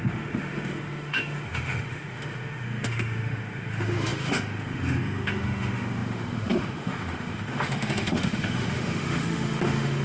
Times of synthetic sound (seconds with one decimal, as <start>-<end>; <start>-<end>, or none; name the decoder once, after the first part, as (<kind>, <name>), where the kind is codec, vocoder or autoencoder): 0.0-10.0 (autoencoder, DAC-VAE)